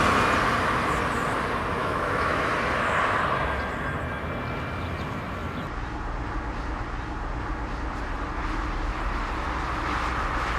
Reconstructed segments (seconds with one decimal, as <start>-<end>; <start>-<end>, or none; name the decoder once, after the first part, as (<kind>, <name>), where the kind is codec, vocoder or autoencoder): 1.8-2.5 (autoencoder, DAC-VAE)